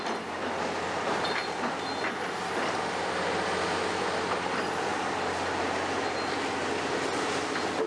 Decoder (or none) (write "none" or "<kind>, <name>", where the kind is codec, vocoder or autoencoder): none